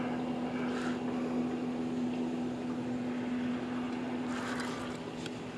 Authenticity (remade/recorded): recorded